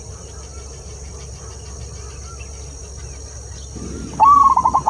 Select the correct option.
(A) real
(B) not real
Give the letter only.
A